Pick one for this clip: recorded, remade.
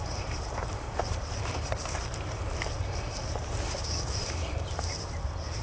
remade